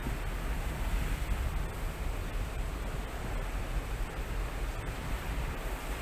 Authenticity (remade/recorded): recorded